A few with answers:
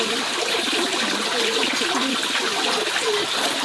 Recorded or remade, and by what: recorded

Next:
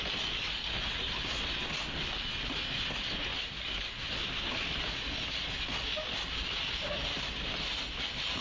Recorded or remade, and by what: recorded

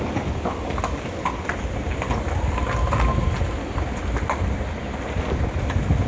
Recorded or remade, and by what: recorded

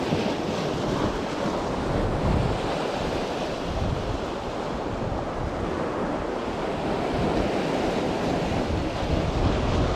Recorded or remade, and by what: recorded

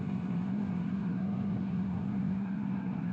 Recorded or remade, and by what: remade, codec, SNAC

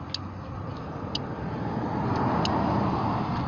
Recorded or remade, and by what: recorded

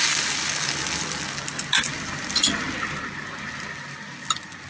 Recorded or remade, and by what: recorded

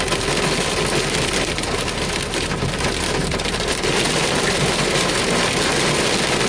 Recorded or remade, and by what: recorded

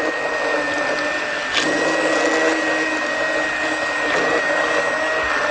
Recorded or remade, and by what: recorded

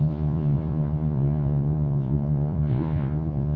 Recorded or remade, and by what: remade, vocoder, Vocos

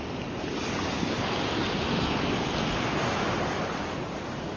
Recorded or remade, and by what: recorded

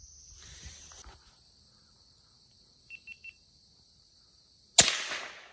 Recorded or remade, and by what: recorded